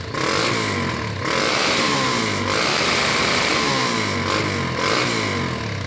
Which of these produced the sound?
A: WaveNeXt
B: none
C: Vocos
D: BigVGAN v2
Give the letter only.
B